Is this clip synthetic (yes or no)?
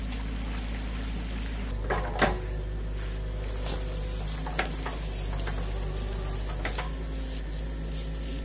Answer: no